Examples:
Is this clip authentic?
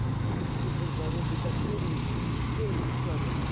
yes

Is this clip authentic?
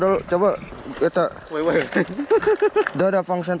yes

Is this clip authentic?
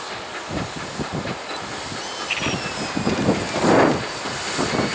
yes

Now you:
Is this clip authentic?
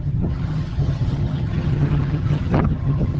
no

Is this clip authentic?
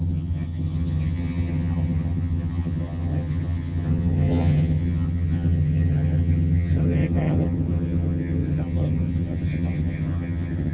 no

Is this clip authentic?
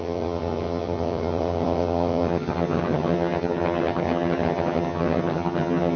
no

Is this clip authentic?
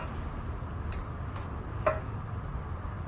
yes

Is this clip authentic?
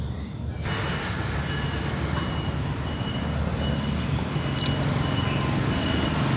yes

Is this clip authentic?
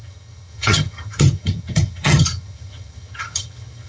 no